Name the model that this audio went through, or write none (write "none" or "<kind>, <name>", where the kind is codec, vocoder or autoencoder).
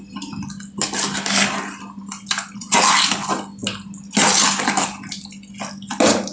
none